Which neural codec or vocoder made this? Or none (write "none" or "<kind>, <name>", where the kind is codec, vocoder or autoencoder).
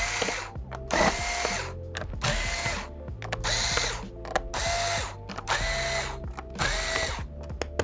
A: none